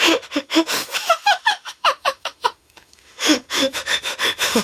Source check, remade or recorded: remade